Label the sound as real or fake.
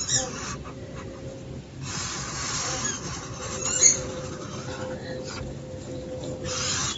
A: real